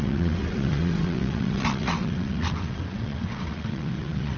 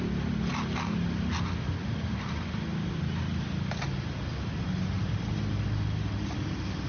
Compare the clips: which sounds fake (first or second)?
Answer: first